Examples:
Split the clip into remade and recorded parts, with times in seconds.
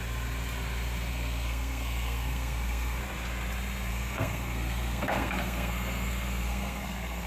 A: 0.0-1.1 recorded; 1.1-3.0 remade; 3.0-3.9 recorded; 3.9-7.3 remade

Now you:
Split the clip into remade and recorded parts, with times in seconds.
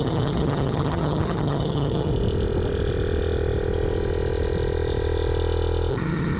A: 0.0-2.1 remade; 2.1-5.9 recorded; 5.9-6.4 remade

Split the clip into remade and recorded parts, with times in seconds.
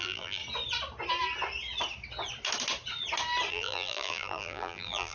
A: 0.0-0.4 remade; 0.4-3.5 recorded; 3.5-5.1 remade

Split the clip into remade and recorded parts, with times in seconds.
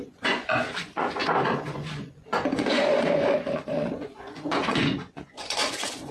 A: 0.0-6.1 remade